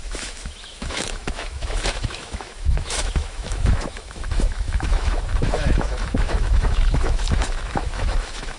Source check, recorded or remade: remade